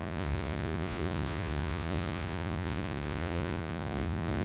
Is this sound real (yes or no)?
no